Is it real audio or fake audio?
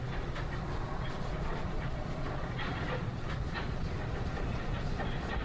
fake